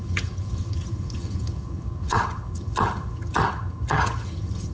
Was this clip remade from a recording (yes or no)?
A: yes